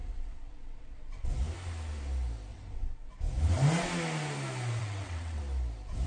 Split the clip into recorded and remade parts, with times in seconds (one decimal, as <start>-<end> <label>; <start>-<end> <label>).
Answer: 0.0-1.3 remade; 1.3-2.5 recorded; 2.5-3.1 remade; 3.1-4.8 recorded; 4.8-5.4 remade; 5.4-6.1 recorded